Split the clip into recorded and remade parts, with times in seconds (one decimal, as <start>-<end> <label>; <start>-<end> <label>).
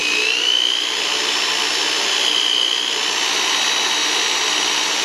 0.0-2.7 remade; 2.7-3.7 recorded; 3.7-5.0 remade